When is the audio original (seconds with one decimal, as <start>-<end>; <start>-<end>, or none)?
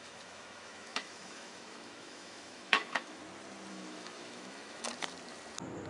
3.2-3.7; 4.9-5.9